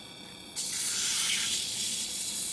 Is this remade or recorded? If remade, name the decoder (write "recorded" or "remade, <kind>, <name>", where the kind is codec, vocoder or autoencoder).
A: remade, vocoder, Vocos